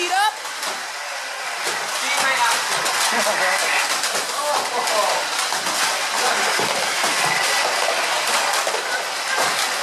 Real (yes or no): yes